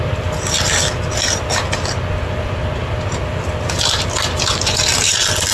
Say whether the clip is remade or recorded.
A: recorded